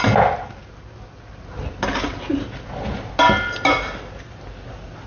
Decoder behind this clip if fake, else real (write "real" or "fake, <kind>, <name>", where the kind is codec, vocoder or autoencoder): real